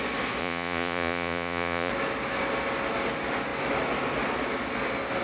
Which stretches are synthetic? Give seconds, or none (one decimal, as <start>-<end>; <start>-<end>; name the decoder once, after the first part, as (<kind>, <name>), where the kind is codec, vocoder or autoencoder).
0.4-1.9 (vocoder, Vocos)